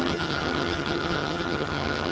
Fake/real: fake